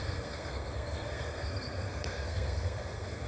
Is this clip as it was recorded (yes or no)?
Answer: no